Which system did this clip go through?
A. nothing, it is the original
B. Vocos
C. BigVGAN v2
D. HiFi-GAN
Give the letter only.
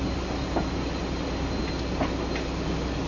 A